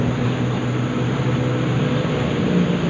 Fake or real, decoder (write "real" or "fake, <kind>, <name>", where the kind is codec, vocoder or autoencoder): real